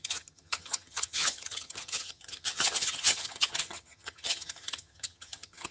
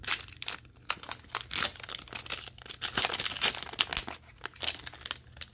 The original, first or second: second